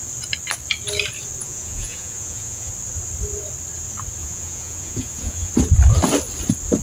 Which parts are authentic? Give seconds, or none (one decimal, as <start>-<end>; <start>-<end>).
0.0-1.4; 2.7-4.2; 5.5-6.8